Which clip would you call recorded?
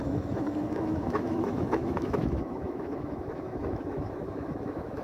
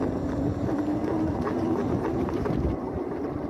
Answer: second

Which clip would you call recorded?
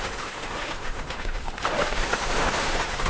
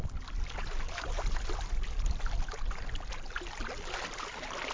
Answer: second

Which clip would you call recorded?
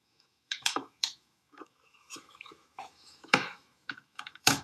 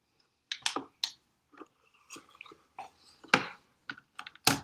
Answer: second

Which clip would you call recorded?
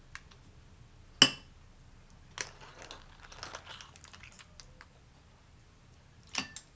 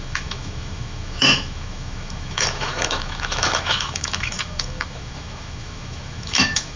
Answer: first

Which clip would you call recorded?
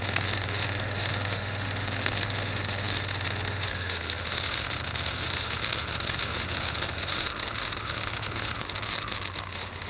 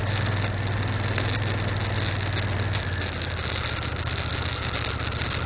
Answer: second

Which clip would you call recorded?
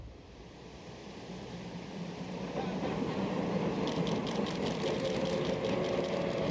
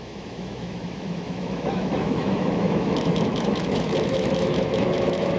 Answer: first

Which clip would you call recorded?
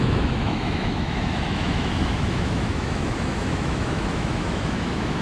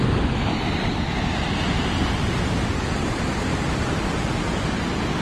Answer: second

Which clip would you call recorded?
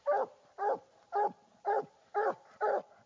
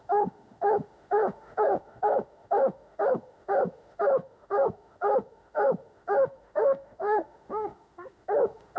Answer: first